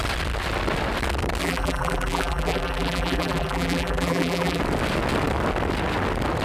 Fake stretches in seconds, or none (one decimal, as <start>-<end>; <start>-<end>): 1.4-4.6

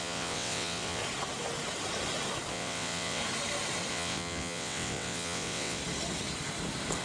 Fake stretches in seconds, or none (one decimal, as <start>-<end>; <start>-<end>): 0.0-1.0; 2.5-3.2; 3.9-5.8